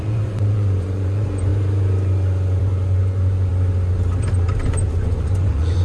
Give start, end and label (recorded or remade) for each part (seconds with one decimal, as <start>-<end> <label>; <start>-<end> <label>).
0.0-1.5 remade; 1.5-2.6 recorded; 2.6-3.5 remade; 3.5-4.6 recorded; 4.6-5.8 remade